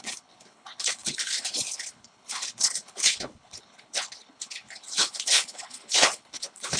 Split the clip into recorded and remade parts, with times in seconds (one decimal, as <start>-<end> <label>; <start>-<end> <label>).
0.0-6.8 remade